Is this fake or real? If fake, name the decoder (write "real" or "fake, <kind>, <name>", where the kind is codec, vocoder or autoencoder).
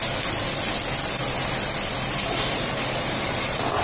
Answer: real